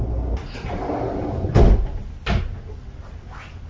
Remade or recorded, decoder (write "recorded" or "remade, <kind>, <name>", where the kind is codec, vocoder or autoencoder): recorded